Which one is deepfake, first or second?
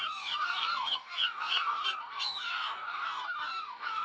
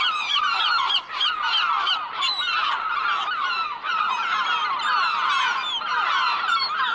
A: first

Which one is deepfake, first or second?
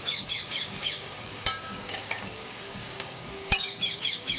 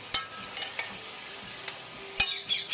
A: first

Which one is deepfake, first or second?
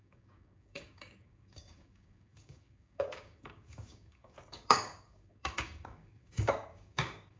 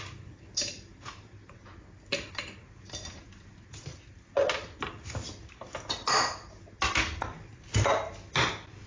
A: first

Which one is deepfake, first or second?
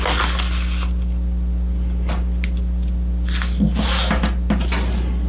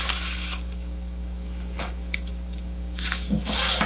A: second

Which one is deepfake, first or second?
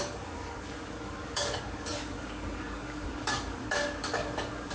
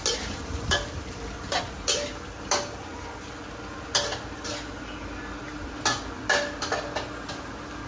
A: first